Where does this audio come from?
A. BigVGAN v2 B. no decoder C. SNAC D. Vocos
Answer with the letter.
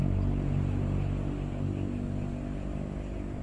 B